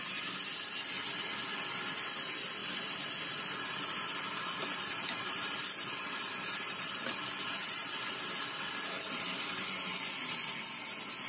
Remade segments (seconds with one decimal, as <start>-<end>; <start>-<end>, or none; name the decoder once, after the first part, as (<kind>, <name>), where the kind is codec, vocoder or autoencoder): none